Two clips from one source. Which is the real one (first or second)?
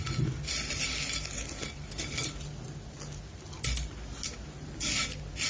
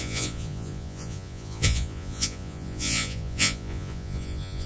first